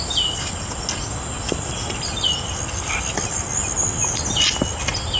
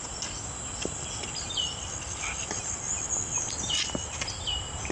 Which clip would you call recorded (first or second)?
first